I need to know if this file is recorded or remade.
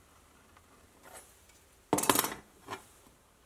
recorded